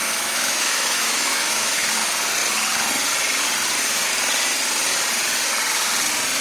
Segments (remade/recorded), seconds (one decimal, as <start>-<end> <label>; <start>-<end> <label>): 0.0-1.9 remade; 1.9-6.4 recorded